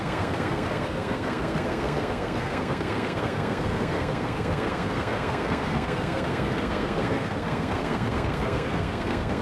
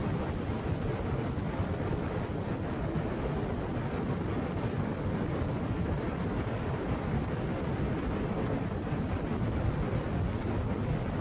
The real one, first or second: second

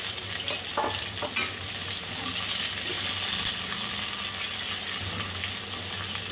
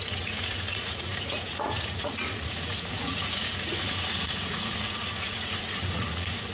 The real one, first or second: first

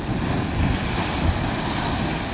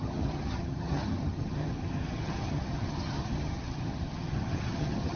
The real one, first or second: first